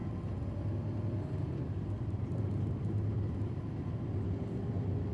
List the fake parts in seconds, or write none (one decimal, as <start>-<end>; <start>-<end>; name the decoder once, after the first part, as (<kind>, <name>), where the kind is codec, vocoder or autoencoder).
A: none